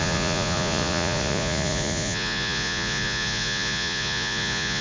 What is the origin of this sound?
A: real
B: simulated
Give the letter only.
B